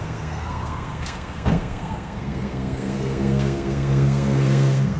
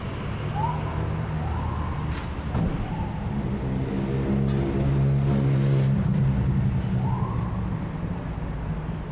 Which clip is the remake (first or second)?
first